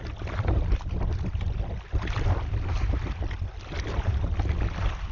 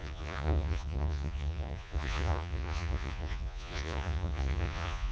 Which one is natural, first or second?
first